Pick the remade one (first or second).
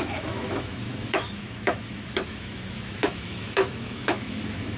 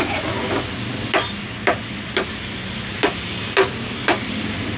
first